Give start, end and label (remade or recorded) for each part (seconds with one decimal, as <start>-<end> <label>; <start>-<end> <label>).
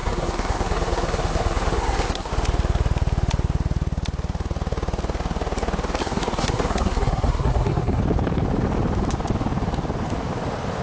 0.0-2.3 remade; 2.3-6.0 recorded; 6.0-8.0 remade; 8.0-10.8 recorded